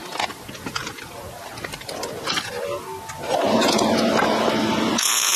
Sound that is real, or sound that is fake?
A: real